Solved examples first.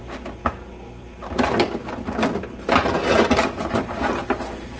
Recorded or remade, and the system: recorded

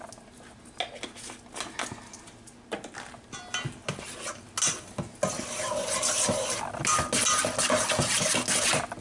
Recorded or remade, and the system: recorded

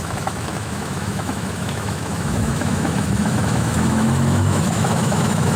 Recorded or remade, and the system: remade, autoencoder, DAC-VAE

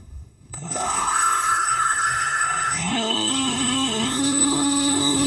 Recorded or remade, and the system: remade, codec, SNAC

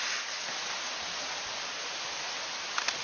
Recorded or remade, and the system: recorded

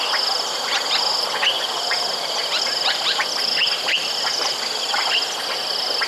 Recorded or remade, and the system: recorded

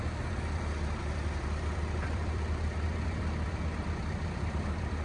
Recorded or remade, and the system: remade, vocoder, BigVGAN v2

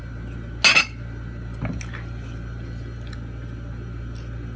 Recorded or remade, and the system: recorded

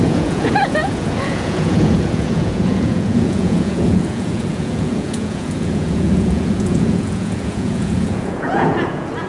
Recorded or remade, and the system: remade, vocoder, Vocos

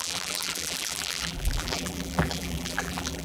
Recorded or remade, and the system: remade, vocoder, BigVGAN v2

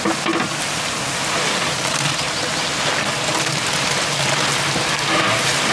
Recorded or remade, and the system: recorded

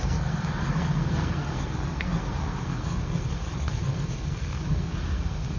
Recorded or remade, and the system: remade, codec, SNAC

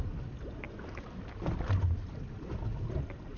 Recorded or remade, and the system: recorded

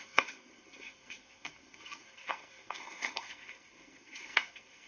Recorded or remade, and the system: remade, codec, SNAC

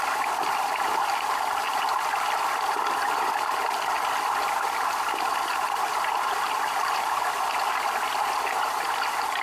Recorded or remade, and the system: recorded